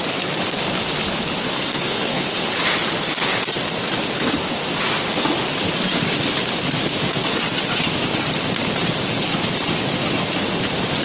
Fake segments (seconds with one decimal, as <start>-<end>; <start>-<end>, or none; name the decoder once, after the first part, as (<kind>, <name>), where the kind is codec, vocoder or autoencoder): 1.4-2.3 (codec, SNAC)